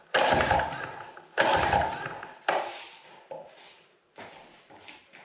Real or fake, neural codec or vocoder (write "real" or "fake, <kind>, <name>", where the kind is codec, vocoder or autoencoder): real